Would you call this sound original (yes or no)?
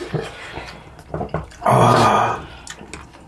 yes